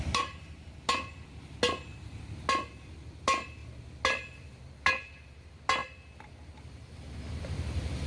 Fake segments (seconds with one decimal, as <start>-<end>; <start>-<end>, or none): none